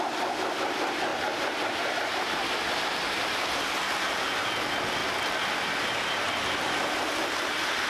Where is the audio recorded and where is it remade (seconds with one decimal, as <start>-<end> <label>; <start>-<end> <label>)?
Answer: 0.0-7.9 recorded

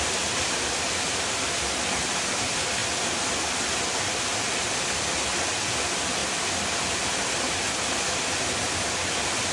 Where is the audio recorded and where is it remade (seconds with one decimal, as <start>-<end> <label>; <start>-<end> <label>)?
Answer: 0.0-9.5 recorded

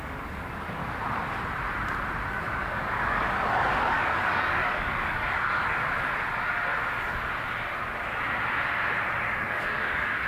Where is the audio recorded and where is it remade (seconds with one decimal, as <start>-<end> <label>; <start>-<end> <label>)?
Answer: 0.0-0.8 remade; 0.8-2.3 recorded; 2.3-5.8 remade; 5.8-9.4 recorded; 9.4-10.3 remade

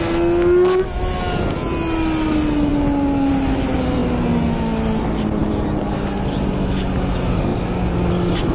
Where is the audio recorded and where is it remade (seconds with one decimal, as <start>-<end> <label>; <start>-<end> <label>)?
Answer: 0.0-8.5 recorded

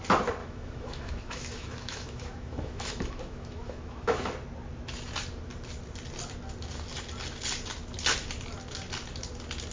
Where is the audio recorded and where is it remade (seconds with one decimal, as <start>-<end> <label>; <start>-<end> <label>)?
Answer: 0.0-0.4 recorded; 0.4-4.3 remade; 4.3-9.7 recorded

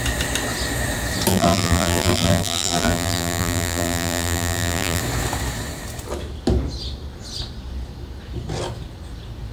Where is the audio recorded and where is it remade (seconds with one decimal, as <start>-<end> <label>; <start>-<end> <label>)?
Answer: 0.0-1.3 recorded; 1.3-5.0 remade; 5.0-9.5 recorded